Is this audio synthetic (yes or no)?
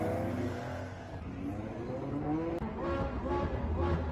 no